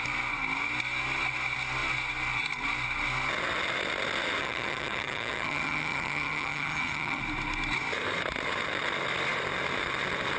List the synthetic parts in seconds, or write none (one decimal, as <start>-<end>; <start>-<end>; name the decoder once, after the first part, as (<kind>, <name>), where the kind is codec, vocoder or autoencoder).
4.4-7.2 (vocoder, HiFi-GAN)